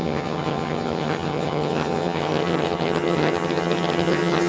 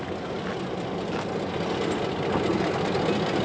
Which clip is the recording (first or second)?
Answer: second